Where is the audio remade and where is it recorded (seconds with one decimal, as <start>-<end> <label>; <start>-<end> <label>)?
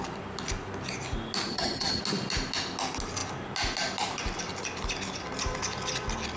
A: 0.0-1.5 recorded; 1.5-2.0 remade; 2.0-6.4 recorded